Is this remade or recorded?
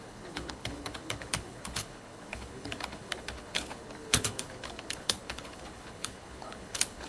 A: remade